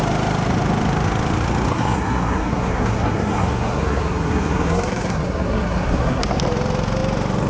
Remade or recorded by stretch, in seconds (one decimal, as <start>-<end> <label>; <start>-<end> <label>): 0.0-1.7 recorded; 1.7-6.2 remade; 6.2-7.5 recorded